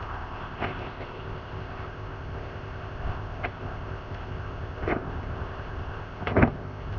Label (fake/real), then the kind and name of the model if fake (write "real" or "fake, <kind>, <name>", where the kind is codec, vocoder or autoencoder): fake, codec, ZipCodec